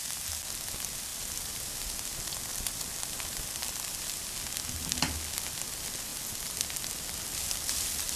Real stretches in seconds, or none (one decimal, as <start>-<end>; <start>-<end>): 0.0-1.1; 1.8-2.5; 3.2-3.6; 4.2-8.2